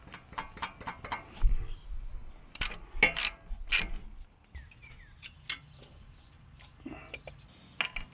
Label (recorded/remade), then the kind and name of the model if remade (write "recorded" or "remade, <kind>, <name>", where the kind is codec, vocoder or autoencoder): recorded